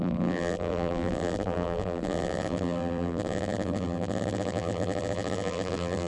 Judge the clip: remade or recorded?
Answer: remade